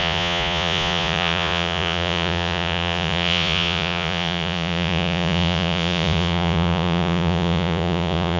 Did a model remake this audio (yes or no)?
yes